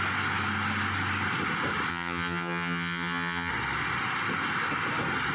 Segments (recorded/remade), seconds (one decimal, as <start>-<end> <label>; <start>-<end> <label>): 0.0-1.9 recorded; 1.9-3.5 remade; 3.5-5.3 recorded